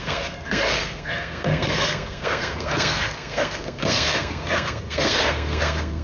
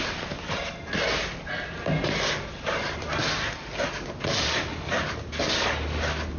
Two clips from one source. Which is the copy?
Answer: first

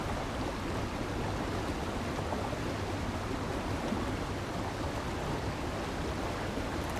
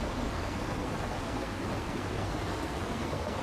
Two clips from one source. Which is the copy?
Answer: second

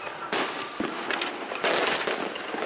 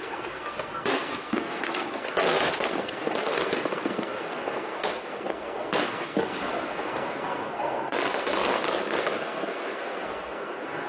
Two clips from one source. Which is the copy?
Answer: second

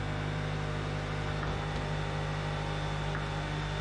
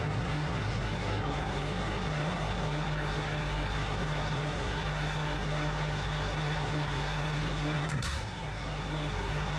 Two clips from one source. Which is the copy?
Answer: second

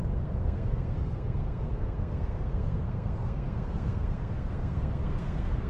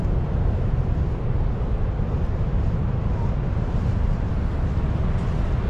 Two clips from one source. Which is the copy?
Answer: first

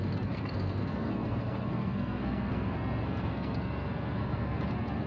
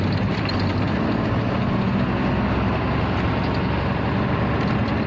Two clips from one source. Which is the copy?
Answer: first